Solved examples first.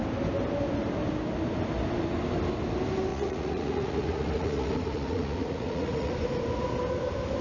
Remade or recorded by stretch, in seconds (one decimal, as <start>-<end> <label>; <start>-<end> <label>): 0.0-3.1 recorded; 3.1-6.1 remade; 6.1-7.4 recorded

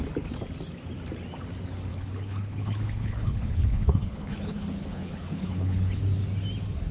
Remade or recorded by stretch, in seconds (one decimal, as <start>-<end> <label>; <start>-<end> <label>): 0.0-1.9 recorded; 1.9-6.0 remade; 6.0-6.9 recorded

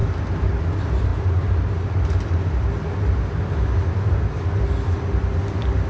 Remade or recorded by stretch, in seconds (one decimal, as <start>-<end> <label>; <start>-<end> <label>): 0.0-5.9 recorded

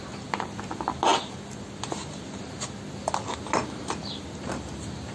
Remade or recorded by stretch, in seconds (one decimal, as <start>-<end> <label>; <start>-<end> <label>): 0.0-5.1 recorded